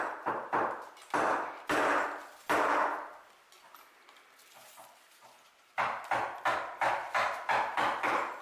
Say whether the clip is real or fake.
real